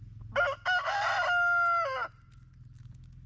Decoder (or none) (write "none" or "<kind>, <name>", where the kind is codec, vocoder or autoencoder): none